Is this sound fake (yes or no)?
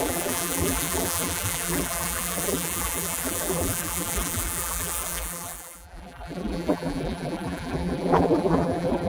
yes